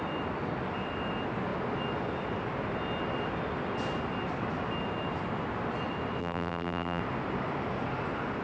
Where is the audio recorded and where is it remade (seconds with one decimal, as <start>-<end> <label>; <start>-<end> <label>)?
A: 0.0-6.2 recorded; 6.2-7.0 remade; 7.0-8.4 recorded